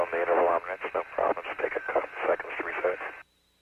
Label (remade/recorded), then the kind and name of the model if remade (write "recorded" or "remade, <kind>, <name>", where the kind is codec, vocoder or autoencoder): recorded